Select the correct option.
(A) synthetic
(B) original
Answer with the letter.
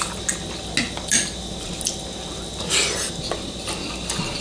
B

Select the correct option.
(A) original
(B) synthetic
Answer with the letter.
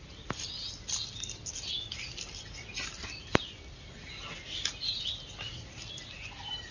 A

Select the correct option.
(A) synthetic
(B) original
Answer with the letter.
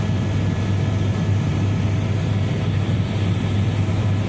B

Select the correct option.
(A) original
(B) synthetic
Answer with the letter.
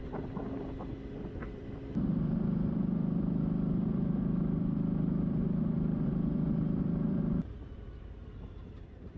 B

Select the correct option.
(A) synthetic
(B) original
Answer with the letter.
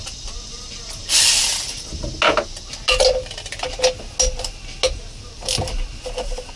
B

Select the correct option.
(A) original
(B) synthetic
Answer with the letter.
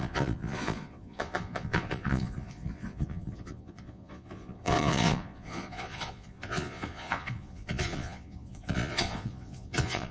B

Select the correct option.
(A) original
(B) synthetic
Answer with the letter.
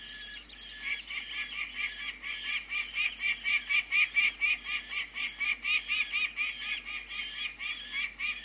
A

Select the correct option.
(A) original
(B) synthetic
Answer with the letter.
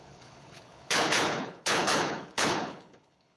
B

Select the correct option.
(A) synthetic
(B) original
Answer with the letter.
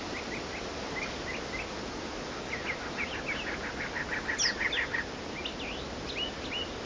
B